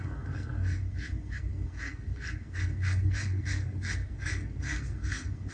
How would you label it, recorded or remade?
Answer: remade